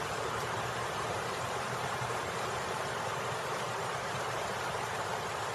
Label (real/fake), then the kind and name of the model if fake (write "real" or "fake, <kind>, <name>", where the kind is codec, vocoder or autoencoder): fake, vocoder, BigVGAN v2